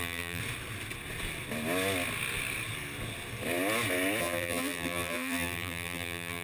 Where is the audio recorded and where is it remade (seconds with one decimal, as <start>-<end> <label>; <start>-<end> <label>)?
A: 0.0-0.4 remade; 0.4-4.2 recorded; 4.2-6.4 remade